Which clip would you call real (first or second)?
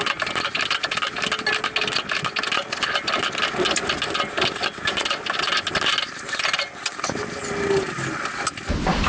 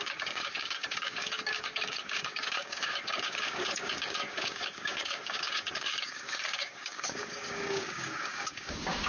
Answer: first